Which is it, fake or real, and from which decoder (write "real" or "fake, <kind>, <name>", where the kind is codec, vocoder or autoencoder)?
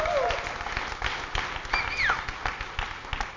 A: real